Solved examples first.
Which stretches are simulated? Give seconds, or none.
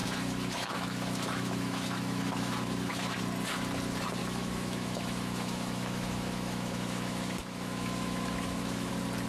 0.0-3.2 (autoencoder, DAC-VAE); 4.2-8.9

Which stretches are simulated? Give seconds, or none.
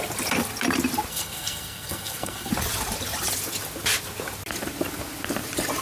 1.1-2.5 (codec, SNAC)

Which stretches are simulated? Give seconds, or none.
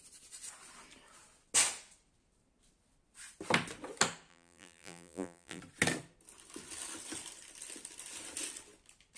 4.3-5.6 (vocoder, BigVGAN v2)